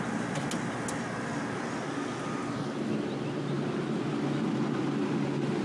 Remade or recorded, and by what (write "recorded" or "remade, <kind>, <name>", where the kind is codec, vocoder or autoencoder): recorded